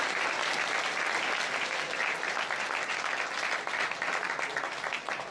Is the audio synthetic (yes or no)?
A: no